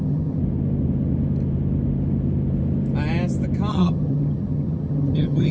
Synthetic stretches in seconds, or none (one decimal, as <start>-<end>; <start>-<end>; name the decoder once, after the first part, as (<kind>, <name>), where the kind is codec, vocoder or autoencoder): 0.0-0.4 (vocoder, HiFi-GAN); 3.7-5.5